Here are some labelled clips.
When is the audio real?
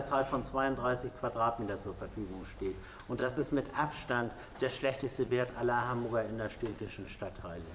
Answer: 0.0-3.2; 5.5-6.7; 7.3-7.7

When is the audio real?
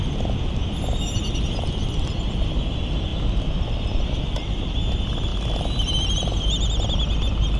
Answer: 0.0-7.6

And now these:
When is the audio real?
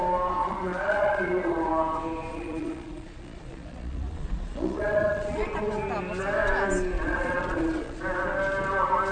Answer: 0.0-0.4; 1.7-2.3; 5.7-7.0; 8.0-9.1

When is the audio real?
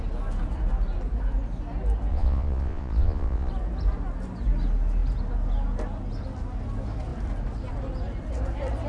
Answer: 0.0-2.1; 3.5-8.9